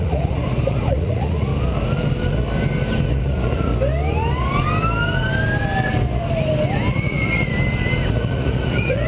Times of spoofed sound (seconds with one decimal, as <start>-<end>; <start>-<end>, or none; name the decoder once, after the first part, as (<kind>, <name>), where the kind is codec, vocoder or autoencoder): 0.0-1.5 (vocoder, Vocos); 3.2-3.7; 6.9-7.5; 8.1-9.1

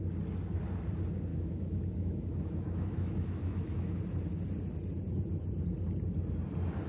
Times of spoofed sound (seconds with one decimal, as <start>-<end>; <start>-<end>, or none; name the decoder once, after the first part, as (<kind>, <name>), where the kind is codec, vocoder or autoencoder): 1.3-4.0 (autoencoder, DAC-VAE)

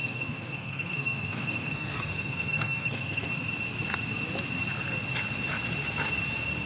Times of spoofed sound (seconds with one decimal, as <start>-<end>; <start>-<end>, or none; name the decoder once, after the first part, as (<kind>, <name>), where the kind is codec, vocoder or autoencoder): 0.0-3.3 (codec, SNAC)

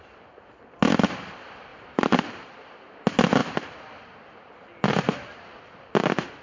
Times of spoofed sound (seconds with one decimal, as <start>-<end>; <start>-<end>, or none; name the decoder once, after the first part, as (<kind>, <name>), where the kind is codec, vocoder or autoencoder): 1.7-2.6 (vocoder, BigVGAN v2)

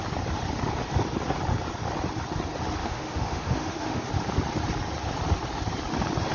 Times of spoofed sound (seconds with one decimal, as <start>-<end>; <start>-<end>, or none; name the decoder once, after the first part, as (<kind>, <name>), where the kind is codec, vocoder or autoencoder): 2.8-4.1 (autoencoder, DAC-VAE)

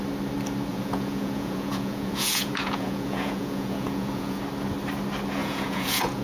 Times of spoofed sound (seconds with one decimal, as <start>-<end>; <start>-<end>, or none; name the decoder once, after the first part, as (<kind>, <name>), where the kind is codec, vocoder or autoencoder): 0.7-4.4 (vocoder, Vocos); 5.4-6.2

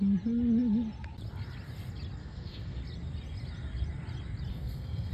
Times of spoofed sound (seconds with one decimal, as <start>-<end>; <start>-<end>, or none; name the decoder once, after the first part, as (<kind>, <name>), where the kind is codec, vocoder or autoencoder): 2.2-2.8 (codec, SNAC); 4.5-5.1